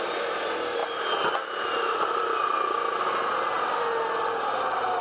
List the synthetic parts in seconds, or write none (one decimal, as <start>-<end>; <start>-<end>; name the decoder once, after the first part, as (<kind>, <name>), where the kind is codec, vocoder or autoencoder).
none